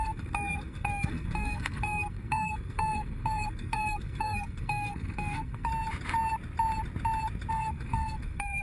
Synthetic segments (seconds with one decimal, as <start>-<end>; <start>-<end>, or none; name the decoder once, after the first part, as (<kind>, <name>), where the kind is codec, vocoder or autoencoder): 0.0-5.7 (codec, SNAC); 7.5-8.6